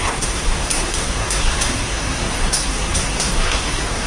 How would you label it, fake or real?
fake